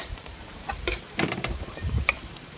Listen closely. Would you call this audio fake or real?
fake